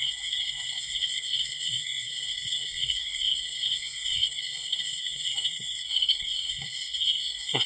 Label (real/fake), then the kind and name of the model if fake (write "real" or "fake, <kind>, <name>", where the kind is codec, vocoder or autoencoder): fake, codec, SNAC